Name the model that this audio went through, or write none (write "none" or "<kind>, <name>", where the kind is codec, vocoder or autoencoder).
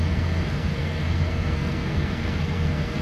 codec, SNAC